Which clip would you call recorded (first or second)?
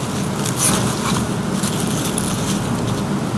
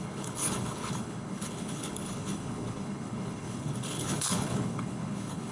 first